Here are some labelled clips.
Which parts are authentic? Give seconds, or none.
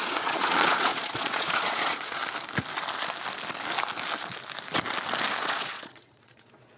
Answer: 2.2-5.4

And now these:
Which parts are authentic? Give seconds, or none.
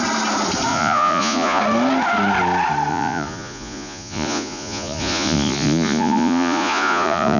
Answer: 0.0-0.7; 1.6-2.9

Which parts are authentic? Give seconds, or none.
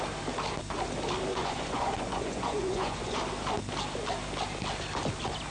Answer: 0.0-1.3; 3.2-5.5